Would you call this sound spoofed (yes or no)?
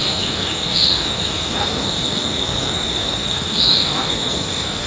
yes